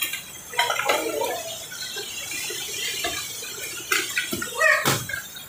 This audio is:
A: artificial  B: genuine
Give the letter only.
B